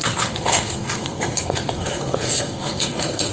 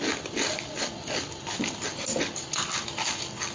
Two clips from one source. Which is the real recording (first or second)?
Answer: second